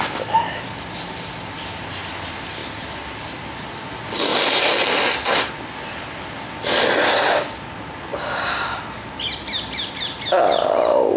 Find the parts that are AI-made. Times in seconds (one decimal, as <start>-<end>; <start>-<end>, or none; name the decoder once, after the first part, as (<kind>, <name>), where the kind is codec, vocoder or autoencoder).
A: none